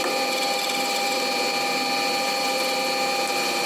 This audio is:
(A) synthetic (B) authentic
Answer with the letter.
B